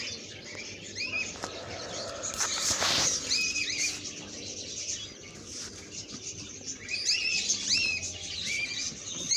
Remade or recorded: recorded